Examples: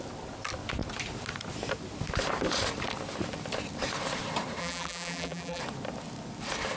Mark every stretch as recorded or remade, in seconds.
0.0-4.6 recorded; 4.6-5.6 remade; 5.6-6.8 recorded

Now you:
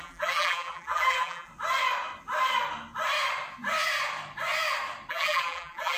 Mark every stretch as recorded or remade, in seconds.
0.0-1.5 remade; 1.5-5.1 recorded; 5.1-6.0 remade